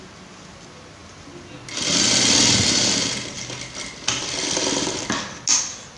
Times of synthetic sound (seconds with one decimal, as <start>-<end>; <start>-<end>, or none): none